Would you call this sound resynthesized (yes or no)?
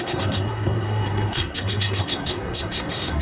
yes